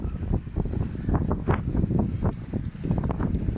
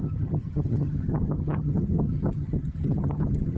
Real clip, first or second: first